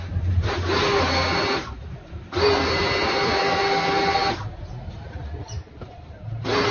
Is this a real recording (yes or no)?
yes